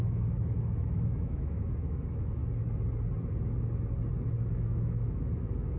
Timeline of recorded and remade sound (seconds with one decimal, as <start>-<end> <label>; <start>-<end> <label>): 0.0-2.4 remade; 2.4-4.5 recorded; 4.5-5.8 remade